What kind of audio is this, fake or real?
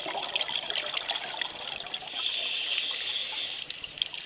real